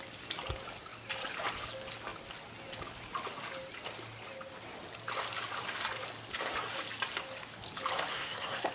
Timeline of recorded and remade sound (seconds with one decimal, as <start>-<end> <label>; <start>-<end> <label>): 0.0-8.1 recorded; 8.1-8.7 remade